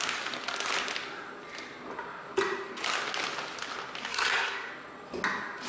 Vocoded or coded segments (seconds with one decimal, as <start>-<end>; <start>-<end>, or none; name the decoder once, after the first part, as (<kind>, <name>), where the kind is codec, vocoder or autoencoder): 4.1-4.7 (codec, SNAC)